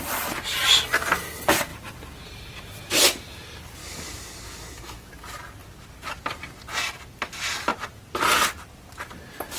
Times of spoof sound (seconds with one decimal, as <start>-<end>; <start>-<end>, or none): 3.8-5.1